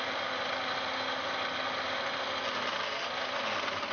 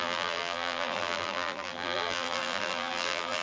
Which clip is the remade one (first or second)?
second